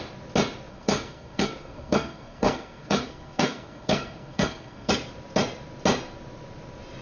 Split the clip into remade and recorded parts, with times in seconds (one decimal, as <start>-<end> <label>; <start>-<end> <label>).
0.0-0.7 recorded; 0.7-4.9 remade; 4.9-7.0 recorded